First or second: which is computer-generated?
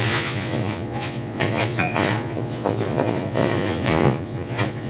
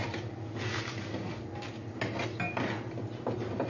first